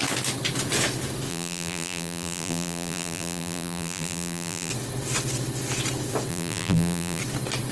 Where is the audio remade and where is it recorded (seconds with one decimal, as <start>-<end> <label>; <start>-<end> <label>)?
0.0-1.3 recorded; 1.3-4.7 remade; 4.7-6.3 recorded; 6.3-7.2 remade; 7.2-7.7 recorded